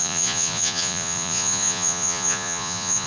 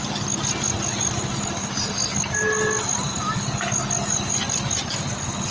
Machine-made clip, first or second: first